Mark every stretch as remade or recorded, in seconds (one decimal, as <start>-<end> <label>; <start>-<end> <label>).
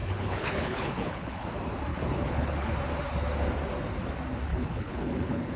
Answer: 0.0-1.5 remade; 1.5-1.9 recorded; 1.9-2.7 remade; 2.7-4.5 recorded; 4.5-5.6 remade